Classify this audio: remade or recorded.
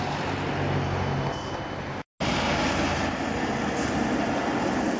recorded